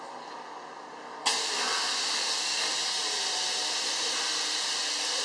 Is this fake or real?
real